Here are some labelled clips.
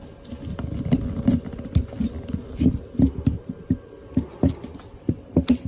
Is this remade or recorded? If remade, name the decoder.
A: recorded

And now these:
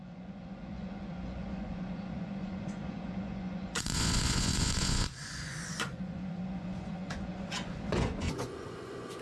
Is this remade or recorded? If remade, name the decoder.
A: remade, vocoder, Vocos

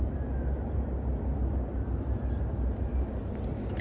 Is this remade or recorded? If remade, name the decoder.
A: recorded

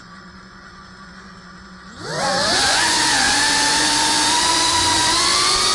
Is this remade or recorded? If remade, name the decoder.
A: remade, vocoder, Vocos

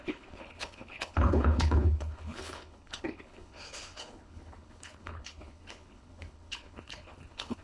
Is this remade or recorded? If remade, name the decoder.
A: remade, codec, HILCodec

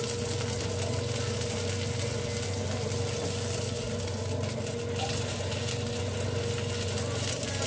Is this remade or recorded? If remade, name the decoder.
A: recorded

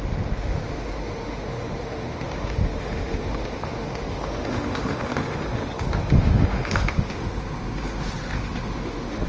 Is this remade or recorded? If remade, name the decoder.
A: remade, autoencoder, DAC-VAE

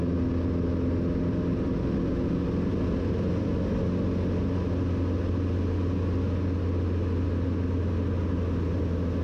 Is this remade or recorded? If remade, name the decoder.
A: recorded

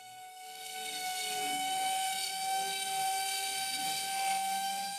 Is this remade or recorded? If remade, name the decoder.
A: remade, codec, SNAC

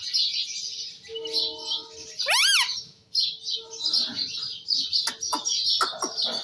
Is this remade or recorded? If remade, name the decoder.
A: recorded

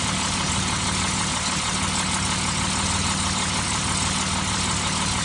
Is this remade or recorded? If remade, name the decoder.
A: recorded